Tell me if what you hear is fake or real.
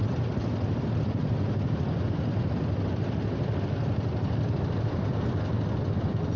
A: real